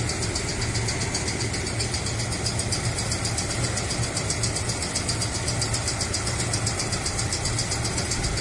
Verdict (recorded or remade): recorded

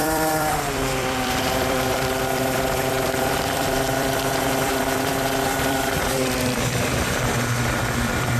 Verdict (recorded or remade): remade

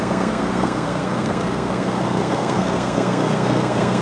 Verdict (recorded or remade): remade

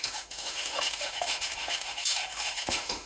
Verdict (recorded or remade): remade